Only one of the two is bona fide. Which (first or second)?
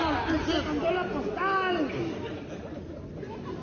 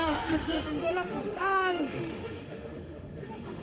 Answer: first